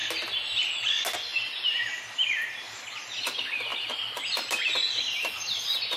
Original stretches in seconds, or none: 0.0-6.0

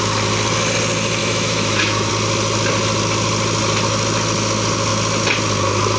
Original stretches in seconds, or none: 0.0-1.2; 2.1-6.0